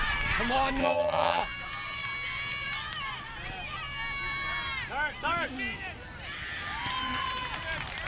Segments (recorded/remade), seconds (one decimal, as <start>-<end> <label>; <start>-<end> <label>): 0.0-0.8 recorded; 0.8-1.4 remade; 1.4-8.1 recorded